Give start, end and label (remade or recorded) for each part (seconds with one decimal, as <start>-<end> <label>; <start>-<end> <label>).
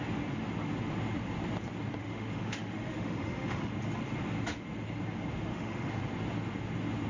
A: 0.0-2.0 recorded; 2.0-3.7 remade; 3.7-5.5 recorded; 5.5-6.0 remade; 6.0-7.1 recorded